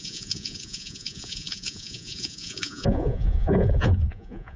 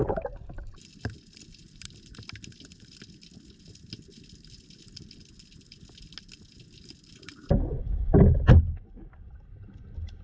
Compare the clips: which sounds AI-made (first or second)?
first